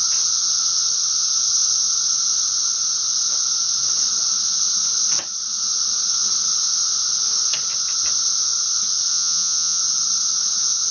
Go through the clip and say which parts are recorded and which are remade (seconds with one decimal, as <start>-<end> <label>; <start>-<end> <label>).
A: 0.0-9.1 recorded; 9.1-9.8 remade; 9.8-10.9 recorded